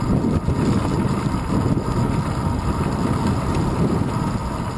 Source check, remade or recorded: recorded